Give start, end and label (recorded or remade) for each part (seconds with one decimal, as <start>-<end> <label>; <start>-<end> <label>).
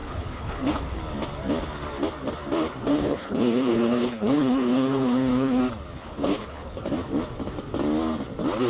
0.0-1.0 remade; 1.0-2.9 recorded; 2.9-5.6 remade; 5.6-6.0 recorded; 6.0-6.8 remade; 6.8-8.7 recorded